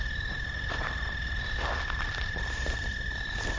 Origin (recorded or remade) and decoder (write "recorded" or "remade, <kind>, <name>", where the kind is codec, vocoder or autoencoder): recorded